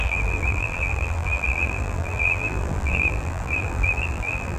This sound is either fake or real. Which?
fake